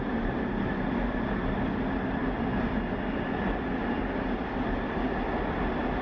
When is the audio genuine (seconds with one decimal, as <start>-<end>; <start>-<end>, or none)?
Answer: 0.0-6.0